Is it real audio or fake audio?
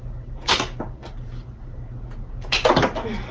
real